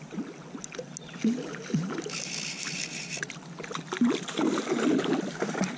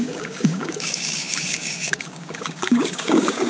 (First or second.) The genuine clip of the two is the first